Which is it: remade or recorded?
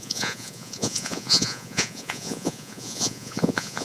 remade